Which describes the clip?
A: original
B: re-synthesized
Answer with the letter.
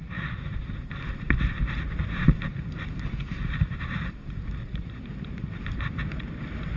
B